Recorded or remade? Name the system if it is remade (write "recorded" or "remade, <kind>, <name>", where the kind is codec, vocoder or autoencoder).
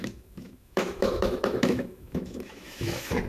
remade, autoencoder, DAC-VAE